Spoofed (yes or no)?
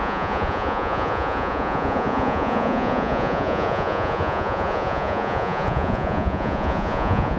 yes